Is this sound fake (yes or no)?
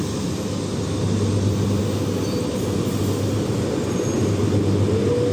no